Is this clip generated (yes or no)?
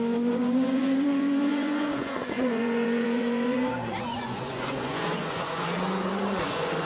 yes